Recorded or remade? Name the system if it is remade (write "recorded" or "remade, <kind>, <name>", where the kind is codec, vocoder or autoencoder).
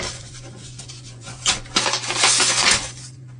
remade, vocoder, Vocos